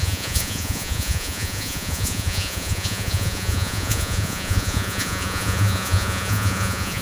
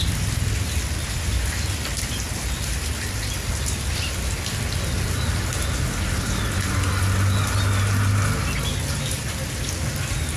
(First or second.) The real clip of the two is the second